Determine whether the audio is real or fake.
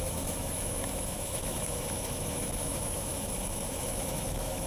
fake